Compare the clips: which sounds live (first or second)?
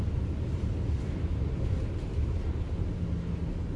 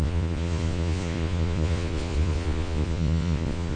first